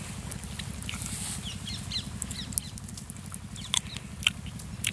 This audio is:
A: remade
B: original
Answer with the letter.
B